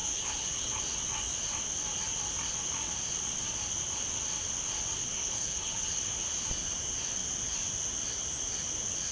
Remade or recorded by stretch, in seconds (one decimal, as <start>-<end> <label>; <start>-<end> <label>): 0.0-0.8 remade; 0.8-5.0 recorded; 5.0-6.1 remade; 6.1-9.1 recorded